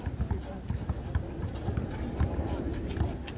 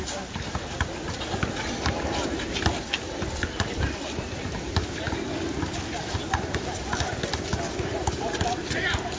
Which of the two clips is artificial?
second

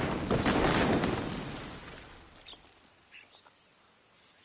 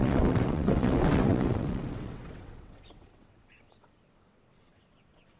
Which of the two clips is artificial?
second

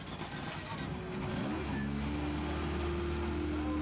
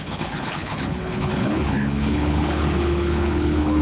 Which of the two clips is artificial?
second